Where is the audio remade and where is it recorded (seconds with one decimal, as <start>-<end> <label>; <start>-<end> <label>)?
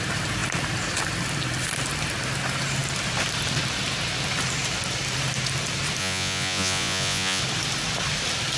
0.0-6.0 recorded; 6.0-7.4 remade; 7.4-8.6 recorded